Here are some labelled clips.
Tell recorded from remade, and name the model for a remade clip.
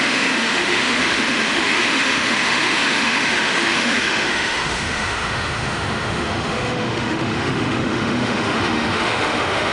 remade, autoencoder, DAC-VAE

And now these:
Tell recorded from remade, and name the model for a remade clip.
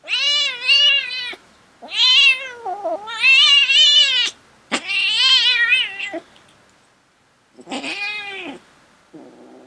recorded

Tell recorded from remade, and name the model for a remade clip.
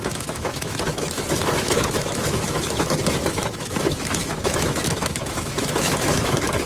remade, autoencoder, DAC-VAE